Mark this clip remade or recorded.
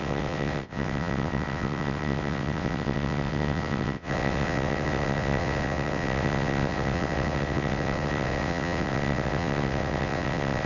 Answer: remade